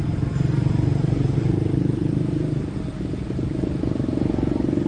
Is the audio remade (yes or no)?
no